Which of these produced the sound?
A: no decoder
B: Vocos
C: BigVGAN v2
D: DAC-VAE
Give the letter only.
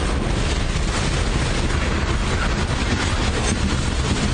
A